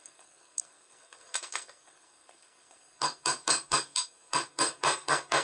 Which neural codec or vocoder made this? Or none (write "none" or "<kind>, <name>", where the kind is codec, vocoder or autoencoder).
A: codec, SNAC